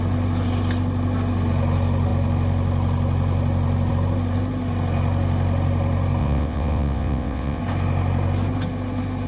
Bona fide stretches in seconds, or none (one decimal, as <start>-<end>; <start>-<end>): 0.0-6.2; 7.6-9.3